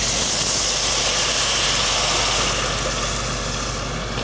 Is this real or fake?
real